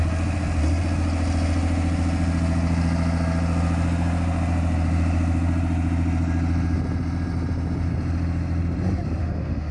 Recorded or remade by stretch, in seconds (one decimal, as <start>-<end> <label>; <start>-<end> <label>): 0.0-9.2 recorded; 9.2-9.7 remade